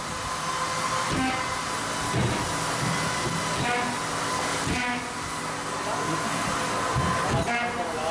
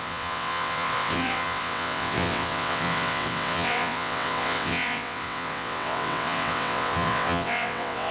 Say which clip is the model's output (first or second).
second